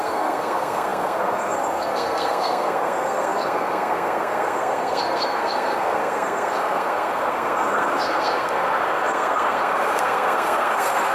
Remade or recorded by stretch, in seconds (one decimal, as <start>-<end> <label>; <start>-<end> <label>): 0.0-11.1 remade